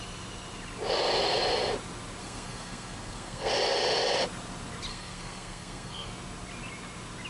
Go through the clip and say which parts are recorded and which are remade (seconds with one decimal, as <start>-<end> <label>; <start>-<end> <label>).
0.0-2.2 recorded; 2.2-3.5 remade; 3.5-4.9 recorded; 4.9-6.1 remade; 6.1-7.3 recorded